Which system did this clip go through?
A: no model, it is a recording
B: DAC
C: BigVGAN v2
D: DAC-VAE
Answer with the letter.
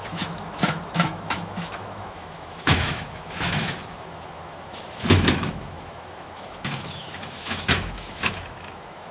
D